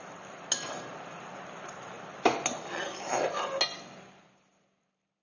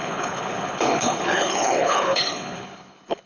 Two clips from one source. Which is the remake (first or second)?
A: second